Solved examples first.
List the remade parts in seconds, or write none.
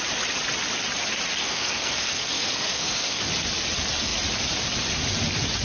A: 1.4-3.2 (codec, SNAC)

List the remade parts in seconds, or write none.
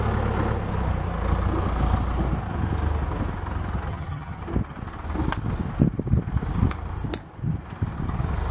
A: 3.9-4.4 (vocoder, HiFi-GAN)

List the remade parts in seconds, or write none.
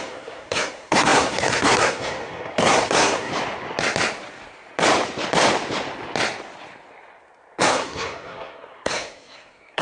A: 0.0-3.3 (codec, SNAC); 7.6-9.8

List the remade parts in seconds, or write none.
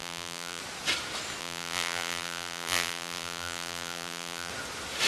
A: 0.0-0.6 (vocoder, BigVGAN v2); 1.4-4.5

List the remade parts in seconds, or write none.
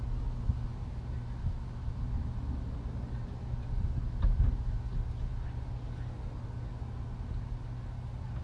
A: none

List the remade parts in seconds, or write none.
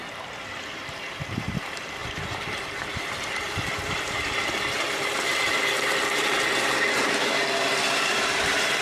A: 0.6-8.8 (vocoder, BigVGAN v2)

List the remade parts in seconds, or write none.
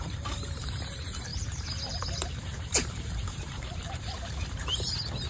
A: 0.0-4.7 (vocoder, BigVGAN v2)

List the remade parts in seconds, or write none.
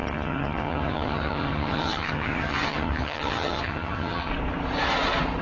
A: 0.0-4.3 (vocoder, HiFi-GAN)